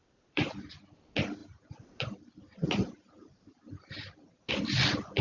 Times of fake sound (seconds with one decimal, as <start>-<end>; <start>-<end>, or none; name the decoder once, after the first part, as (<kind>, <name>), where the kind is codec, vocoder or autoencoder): 0.0-0.7 (vocoder, BigVGAN v2); 1.4-4.5